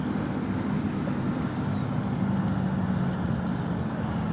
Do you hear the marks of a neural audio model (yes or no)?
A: no